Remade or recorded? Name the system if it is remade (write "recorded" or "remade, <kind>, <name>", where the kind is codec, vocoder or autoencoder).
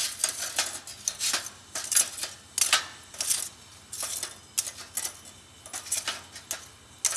recorded